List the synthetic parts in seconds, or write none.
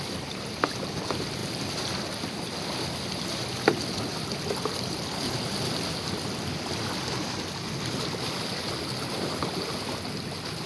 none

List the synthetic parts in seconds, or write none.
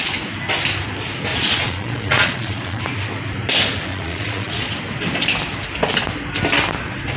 1.3-2.8 (vocoder, Vocos); 3.9-4.8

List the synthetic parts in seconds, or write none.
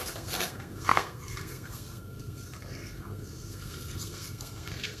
0.0-5.0 (codec, SNAC)